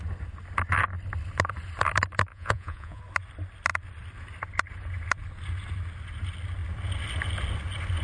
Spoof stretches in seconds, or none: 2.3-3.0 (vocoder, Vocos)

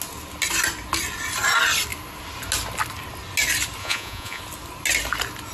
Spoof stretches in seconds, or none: 3.8-4.4 (vocoder, Vocos)

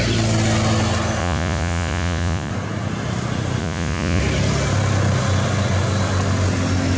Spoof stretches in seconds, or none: 1.2-2.5 (vocoder, Vocos); 3.6-4.2